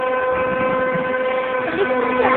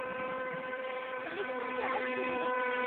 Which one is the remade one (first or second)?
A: second